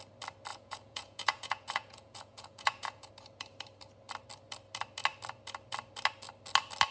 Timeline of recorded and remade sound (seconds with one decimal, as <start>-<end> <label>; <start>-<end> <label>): 0.0-0.5 recorded; 0.5-3.1 remade; 3.1-6.9 recorded